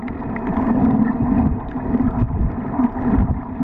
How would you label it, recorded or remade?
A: recorded